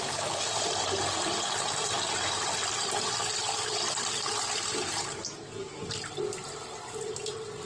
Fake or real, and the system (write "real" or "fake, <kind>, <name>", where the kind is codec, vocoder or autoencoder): real